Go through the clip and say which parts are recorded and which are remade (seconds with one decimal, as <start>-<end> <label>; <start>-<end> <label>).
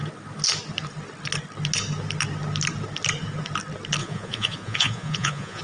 0.0-4.0 recorded; 4.0-5.6 remade